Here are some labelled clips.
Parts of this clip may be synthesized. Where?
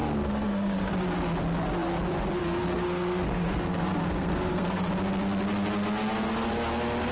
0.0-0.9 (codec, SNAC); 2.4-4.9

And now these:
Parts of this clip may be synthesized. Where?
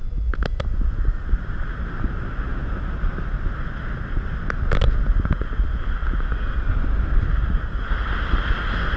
none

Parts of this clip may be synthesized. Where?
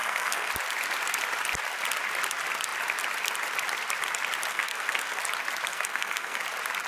0.0-0.5 (codec, SNAC); 4.5-5.2; 5.7-6.4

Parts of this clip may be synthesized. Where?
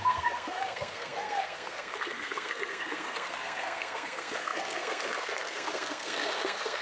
0.0-6.8 (codec, SNAC)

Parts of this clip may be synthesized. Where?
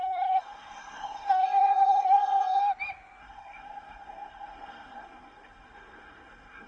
0.0-2.6 (codec, SNAC); 3.2-6.7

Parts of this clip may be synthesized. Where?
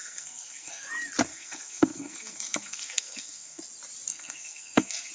0.0-0.9 (codec, SNAC); 1.3-3.6; 4.1-5.1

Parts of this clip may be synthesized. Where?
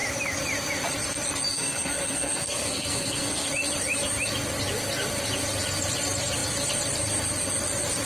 1.5-3.5 (codec, SNAC)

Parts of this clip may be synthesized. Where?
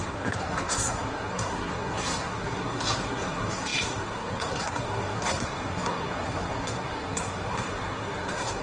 0.0-8.6 (codec, SNAC)